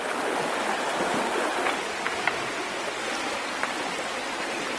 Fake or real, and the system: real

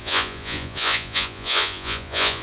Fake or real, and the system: fake, vocoder, Vocos